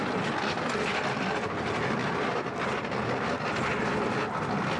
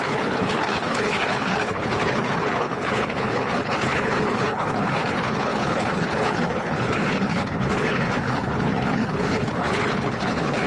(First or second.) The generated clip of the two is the second